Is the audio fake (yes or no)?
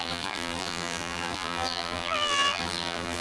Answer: yes